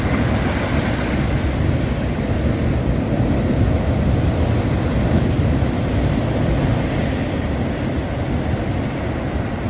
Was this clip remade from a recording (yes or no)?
no